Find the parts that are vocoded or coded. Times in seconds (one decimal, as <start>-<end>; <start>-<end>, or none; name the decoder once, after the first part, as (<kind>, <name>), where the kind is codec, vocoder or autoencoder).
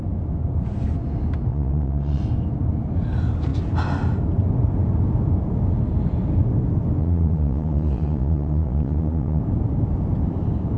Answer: 1.5-2.2 (vocoder, Vocos); 7.0-9.4